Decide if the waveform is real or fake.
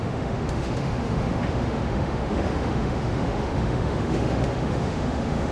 fake